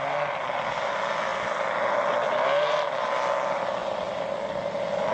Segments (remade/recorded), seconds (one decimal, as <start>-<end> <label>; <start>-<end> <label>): 0.0-5.1 recorded